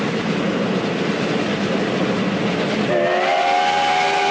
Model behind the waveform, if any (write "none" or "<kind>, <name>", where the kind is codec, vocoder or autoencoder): none